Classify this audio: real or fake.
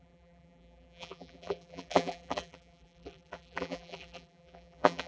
fake